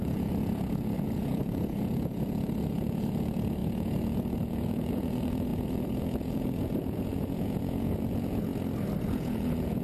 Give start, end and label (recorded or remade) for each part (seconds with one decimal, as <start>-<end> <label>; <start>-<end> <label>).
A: 0.0-8.5 remade; 8.5-9.0 recorded; 9.0-9.8 remade